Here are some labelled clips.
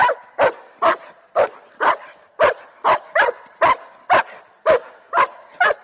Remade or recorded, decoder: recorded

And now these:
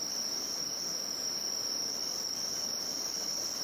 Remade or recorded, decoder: remade, vocoder, BigVGAN v2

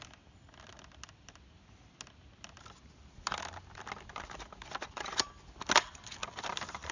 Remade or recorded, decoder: recorded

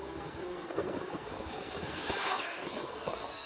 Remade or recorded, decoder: remade, codec, SNAC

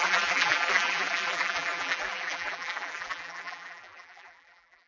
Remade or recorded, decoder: remade, vocoder, BigVGAN v2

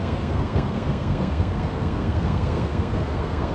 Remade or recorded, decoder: remade, codec, SNAC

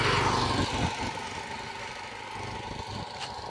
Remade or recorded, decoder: recorded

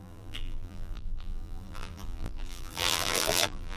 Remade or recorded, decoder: remade, vocoder, BigVGAN v2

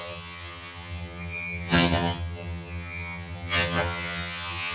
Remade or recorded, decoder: remade, vocoder, HiFi-GAN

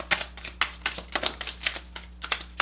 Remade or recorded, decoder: recorded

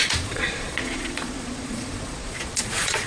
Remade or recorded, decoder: remade, vocoder, Vocos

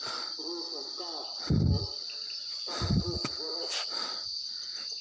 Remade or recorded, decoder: recorded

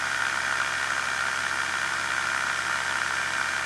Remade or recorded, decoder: recorded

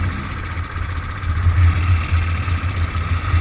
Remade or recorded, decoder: recorded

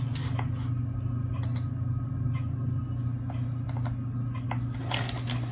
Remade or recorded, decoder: recorded